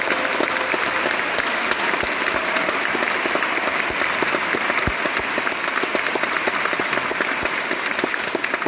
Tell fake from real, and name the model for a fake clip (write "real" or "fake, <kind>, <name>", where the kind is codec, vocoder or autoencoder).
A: real